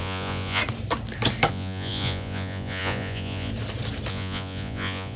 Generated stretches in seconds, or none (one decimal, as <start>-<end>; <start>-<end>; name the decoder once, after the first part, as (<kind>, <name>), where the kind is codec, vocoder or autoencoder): 0.0-0.6 (vocoder, Vocos); 1.5-3.5; 4.1-5.2